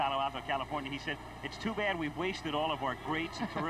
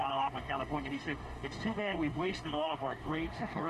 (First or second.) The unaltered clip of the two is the first